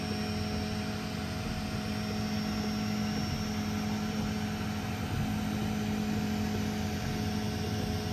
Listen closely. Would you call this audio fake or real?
real